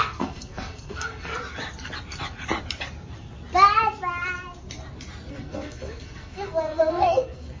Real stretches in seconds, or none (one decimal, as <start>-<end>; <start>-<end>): 1.3-5.3